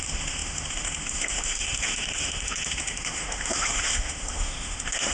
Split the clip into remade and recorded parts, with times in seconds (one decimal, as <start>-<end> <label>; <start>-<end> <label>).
0.0-5.1 remade